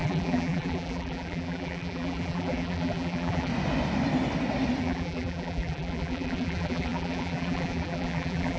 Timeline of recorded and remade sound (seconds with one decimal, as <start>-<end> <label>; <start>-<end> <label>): 0.0-3.5 remade; 3.5-4.8 recorded; 4.8-8.6 remade